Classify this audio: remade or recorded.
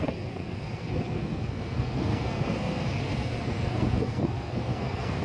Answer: remade